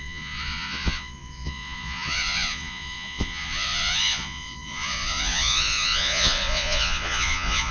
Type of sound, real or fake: fake